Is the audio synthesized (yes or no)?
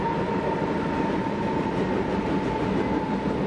no